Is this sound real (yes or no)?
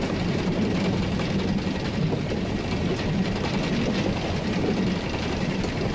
yes